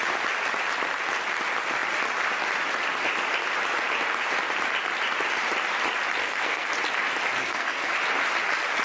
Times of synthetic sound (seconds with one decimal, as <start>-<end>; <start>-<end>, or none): 6.2-6.7; 7.4-7.9